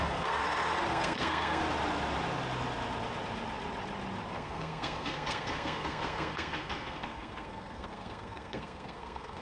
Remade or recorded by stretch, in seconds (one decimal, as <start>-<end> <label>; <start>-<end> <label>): 0.0-0.4 remade; 0.4-0.9 recorded; 0.9-1.6 remade; 1.6-4.3 recorded; 4.3-9.4 remade